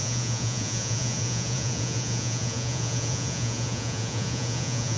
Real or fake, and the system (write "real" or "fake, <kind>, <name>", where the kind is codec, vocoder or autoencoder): fake, vocoder, Vocos